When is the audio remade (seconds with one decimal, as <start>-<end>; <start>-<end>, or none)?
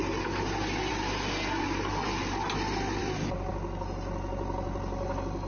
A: none